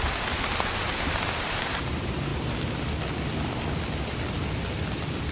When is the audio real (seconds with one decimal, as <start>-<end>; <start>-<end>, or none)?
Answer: 2.3-5.3